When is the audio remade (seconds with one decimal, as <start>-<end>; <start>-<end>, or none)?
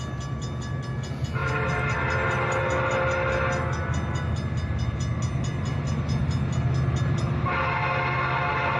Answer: none